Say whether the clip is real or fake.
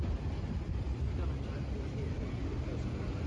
real